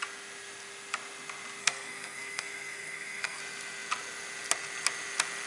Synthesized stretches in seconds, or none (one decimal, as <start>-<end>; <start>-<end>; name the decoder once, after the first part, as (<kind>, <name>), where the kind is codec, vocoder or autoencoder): 1.6-3.4 (codec, SNAC)